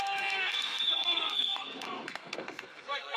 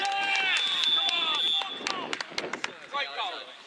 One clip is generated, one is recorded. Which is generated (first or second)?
first